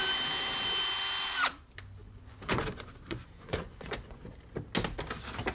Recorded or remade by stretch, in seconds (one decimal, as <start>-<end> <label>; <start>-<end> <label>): 0.0-2.0 recorded; 2.0-4.3 remade; 4.3-5.5 recorded